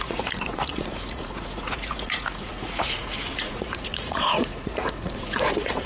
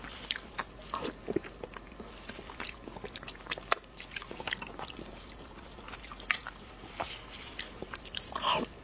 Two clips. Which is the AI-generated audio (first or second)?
first